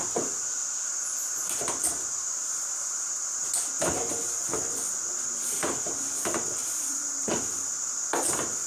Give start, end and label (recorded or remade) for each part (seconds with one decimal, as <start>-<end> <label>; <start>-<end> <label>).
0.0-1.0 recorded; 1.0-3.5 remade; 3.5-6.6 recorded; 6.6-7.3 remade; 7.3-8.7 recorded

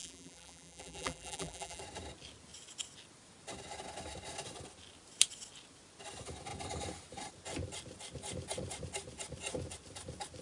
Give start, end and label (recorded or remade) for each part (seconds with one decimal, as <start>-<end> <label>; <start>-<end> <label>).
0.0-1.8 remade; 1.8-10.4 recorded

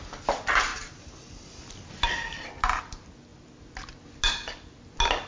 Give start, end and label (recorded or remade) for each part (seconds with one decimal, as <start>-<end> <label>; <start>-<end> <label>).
0.0-5.3 recorded

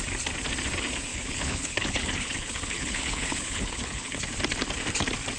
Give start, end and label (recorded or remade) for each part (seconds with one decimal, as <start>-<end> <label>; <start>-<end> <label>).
0.0-1.1 recorded; 1.1-4.3 remade; 4.3-5.4 recorded

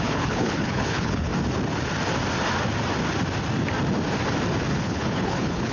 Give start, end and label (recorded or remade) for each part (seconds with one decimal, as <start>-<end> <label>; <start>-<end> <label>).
0.0-1.3 remade; 1.3-4.7 recorded; 4.7-5.7 remade